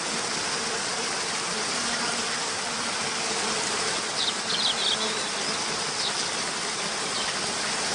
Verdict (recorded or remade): recorded